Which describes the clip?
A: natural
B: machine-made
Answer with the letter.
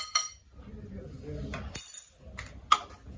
A